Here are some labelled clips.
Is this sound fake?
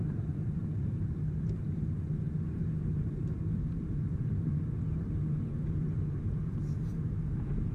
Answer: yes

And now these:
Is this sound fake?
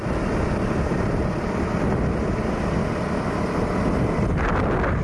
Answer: no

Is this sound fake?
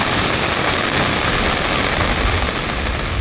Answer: no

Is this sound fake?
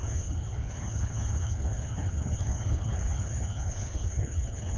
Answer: yes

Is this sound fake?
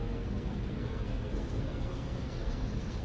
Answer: yes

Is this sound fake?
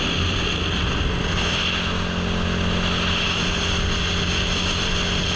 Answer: no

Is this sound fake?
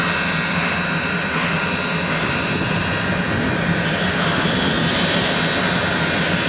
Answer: no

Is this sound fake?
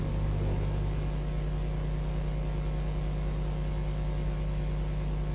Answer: no